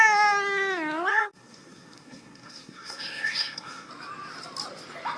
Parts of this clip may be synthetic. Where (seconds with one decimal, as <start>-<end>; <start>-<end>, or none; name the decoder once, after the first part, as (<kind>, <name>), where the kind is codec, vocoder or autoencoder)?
1.1-3.9 (codec, SNAC)